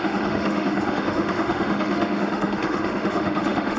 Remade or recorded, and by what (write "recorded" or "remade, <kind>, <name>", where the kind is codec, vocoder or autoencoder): remade, autoencoder, DAC-VAE